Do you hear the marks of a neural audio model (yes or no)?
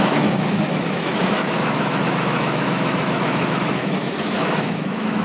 yes